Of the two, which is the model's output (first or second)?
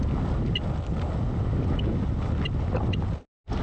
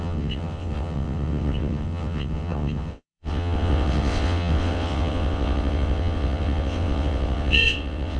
second